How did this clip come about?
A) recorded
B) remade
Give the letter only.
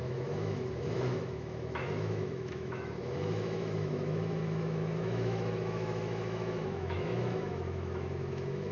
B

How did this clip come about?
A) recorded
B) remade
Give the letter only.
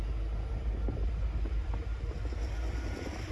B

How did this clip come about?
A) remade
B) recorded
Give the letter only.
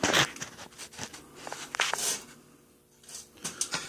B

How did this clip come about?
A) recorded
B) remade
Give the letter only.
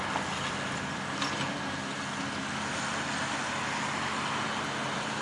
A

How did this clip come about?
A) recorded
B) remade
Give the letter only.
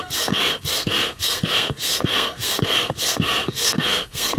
B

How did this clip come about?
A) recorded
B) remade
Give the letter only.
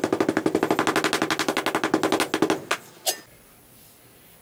A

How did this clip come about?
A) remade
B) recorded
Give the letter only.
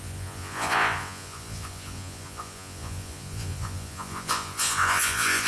A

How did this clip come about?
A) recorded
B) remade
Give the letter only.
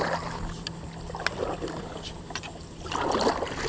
A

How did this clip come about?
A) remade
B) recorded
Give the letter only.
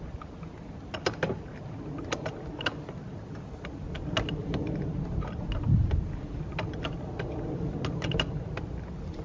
B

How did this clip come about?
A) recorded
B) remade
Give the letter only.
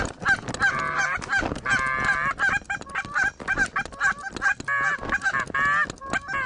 A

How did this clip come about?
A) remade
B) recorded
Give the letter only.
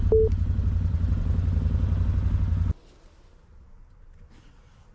B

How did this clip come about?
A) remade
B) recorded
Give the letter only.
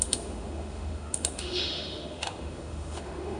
A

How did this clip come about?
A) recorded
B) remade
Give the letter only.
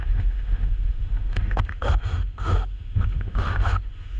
B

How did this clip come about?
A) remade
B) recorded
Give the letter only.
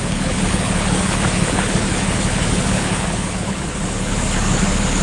A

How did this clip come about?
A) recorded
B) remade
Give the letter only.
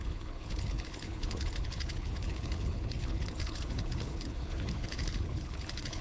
B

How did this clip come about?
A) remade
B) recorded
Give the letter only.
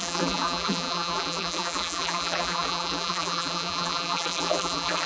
A